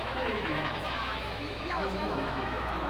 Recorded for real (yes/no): no